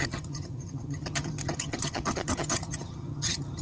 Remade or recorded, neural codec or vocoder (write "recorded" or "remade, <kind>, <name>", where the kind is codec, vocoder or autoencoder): remade, vocoder, HiFi-GAN